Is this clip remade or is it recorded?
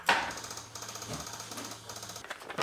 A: recorded